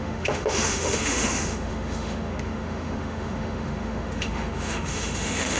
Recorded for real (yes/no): no